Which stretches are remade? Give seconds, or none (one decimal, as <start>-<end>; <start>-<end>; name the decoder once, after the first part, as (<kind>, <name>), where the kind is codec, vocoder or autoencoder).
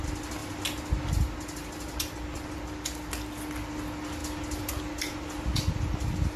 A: none